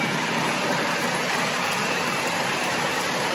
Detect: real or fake fake